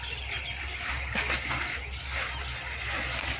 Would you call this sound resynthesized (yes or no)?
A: no